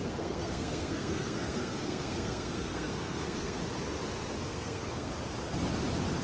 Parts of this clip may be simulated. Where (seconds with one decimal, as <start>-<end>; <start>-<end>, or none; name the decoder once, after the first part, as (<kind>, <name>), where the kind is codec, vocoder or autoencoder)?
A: 0.0-3.6 (codec, SNAC); 4.4-5.1